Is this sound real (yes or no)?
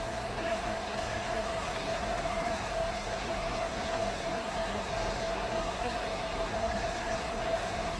no